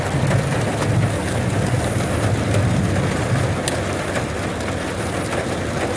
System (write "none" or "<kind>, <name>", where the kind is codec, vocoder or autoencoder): none